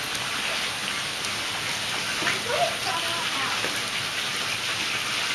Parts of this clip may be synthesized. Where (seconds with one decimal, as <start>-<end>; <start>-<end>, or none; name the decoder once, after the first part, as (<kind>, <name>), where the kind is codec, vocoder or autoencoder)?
none